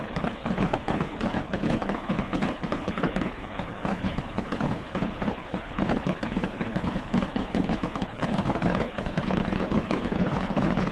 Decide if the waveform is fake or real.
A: fake